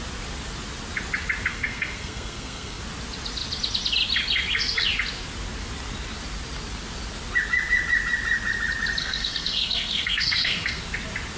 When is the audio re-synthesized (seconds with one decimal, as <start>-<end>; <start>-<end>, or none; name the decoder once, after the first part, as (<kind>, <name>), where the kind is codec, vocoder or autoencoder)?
1.5-2.8 (codec, SNAC); 9.0-10.8